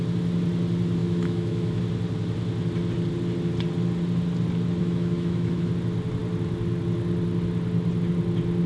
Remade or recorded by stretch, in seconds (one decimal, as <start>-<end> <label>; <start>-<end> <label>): 0.0-1.0 recorded; 1.0-1.8 remade; 1.8-4.8 recorded; 4.8-5.7 remade; 5.7-8.7 recorded